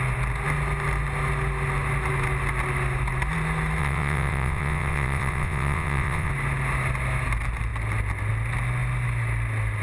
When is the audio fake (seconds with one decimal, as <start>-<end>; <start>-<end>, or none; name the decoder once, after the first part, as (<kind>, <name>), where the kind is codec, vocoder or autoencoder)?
3.8-6.3 (vocoder, WaveNeXt)